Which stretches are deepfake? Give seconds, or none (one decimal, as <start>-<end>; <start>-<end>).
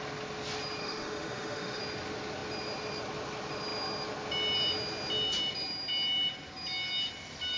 0.8-1.8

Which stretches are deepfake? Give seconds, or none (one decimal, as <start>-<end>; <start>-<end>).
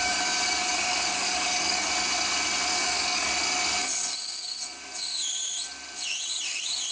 0.0-1.9; 2.7-3.3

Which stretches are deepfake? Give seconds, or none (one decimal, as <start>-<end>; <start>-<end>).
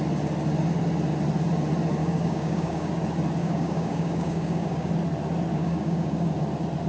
2.0-2.9; 3.4-4.9; 5.5-6.3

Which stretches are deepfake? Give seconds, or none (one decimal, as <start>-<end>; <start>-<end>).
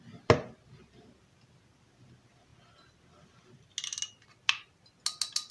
none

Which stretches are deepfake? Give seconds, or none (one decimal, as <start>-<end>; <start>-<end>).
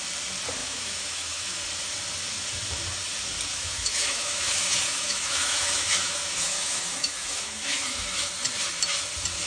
0.6-1.6; 3.5-8.3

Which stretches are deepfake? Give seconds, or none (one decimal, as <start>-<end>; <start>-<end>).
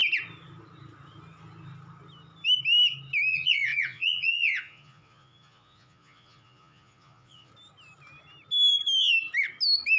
3.3-7.5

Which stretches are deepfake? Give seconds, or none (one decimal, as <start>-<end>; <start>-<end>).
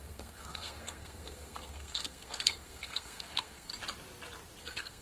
0.0-3.7; 4.6-5.0